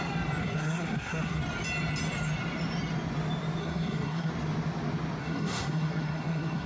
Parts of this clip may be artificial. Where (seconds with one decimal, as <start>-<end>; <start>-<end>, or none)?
0.4-1.4; 3.6-4.3; 5.2-6.7